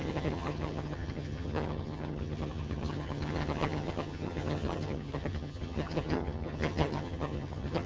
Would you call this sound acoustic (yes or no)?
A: no